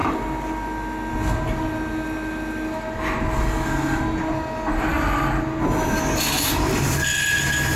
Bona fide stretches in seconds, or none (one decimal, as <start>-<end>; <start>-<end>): 0.0-7.8